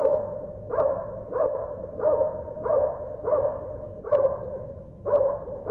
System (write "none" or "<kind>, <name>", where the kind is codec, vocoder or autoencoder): autoencoder, DAC-VAE